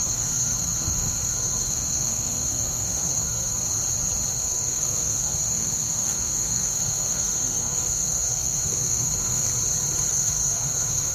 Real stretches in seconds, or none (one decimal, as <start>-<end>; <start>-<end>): 3.6-4.3; 9.5-10.1